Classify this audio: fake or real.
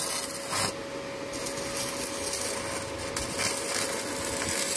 real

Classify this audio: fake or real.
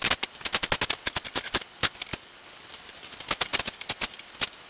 real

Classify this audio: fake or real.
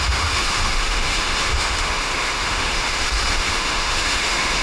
fake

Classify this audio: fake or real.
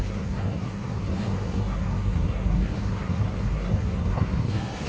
fake